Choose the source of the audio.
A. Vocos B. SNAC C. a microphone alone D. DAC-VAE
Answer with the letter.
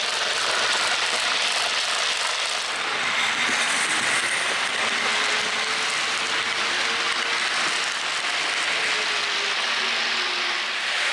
C